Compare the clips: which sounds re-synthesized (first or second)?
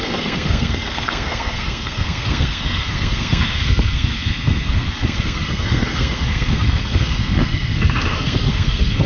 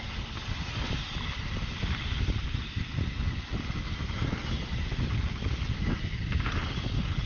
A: first